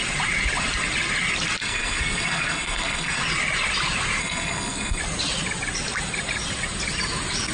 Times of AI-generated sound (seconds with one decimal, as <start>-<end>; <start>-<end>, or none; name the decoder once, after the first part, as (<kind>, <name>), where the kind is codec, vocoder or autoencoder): 1.6-3.2 (codec, SNAC); 4.2-5.0